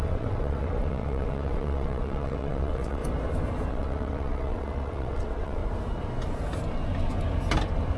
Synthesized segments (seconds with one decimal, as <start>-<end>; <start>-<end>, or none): 0.0-3.0; 3.7-5.6